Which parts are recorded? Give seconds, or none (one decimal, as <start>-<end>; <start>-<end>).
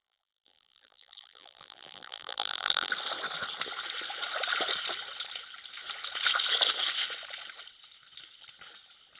2.9-9.2